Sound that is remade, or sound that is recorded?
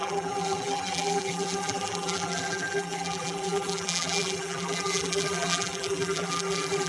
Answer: remade